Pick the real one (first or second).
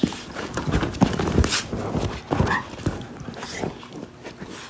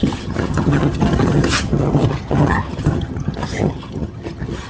first